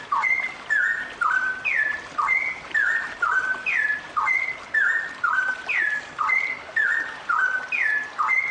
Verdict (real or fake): real